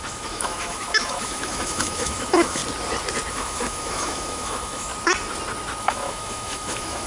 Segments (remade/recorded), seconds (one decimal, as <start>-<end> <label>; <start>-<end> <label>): 0.0-2.6 remade; 2.6-3.3 recorded; 3.3-4.9 remade; 4.9-5.8 recorded; 5.8-7.1 remade

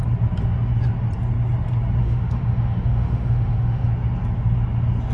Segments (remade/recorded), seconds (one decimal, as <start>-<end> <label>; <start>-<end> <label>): 0.0-2.0 recorded; 2.0-3.9 remade; 3.9-5.1 recorded